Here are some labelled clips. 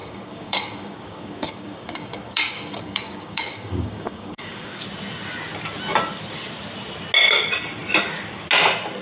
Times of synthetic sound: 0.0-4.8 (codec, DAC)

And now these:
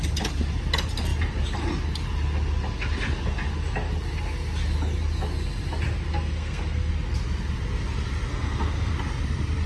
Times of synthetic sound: 6.1-6.9 (codec, SNAC); 8.3-8.9

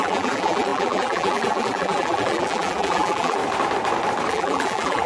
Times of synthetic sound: 0.0-3.4 (vocoder, BigVGAN v2); 4.3-5.1

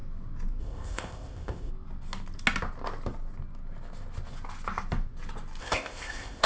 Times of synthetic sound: 0.6-1.7 (codec, ZipCodec); 5.6-6.5

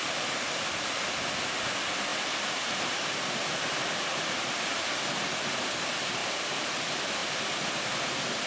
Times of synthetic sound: 2.1-5.0 (vocoder, BigVGAN v2); 6.2-6.8; 7.2-7.9

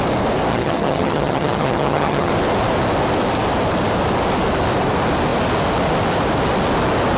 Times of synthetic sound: 0.5-2.3 (vocoder, HiFi-GAN)

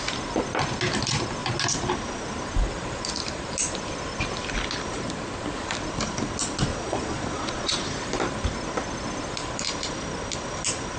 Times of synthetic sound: 6.7-7.8 (vocoder, Vocos)